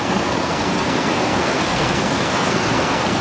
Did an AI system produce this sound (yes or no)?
yes